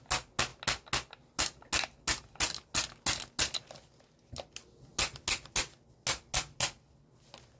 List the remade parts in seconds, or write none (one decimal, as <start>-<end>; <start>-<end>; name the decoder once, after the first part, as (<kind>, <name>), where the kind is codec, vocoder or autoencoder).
none